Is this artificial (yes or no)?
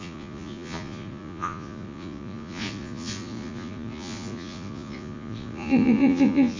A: yes